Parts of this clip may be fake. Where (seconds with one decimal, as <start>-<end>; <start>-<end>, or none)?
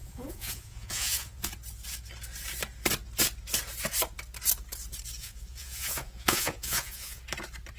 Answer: 0.0-1.5; 5.2-7.2